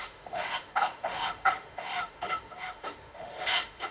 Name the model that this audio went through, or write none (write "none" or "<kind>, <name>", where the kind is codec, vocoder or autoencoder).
autoencoder, DAC-VAE